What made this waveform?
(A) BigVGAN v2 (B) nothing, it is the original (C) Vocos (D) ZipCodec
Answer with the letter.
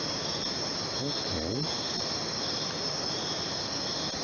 B